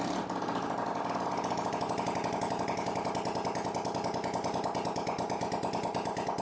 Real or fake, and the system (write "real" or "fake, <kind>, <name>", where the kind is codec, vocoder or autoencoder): real